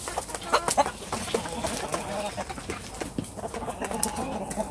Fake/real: real